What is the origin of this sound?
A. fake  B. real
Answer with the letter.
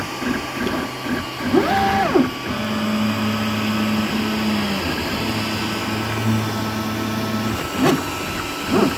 B